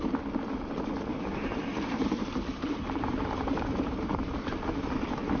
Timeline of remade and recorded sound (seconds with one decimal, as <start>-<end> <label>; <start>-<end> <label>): 0.0-1.1 recorded; 1.1-4.3 remade; 4.3-5.4 recorded